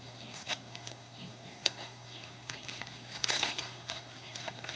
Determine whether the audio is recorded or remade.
remade